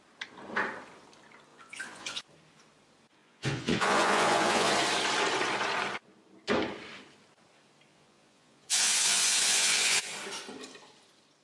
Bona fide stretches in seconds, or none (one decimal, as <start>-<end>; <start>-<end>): 0.0-1.5; 2.2-3.2; 4.7-7.9; 10.1-11.4